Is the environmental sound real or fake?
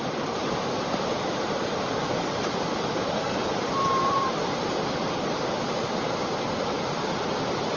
fake